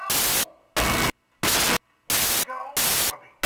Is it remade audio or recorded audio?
recorded